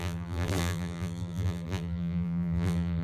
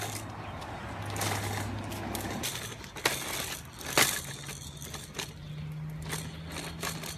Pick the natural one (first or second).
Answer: second